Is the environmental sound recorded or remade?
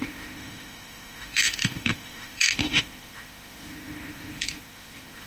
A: remade